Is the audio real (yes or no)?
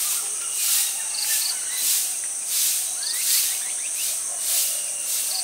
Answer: yes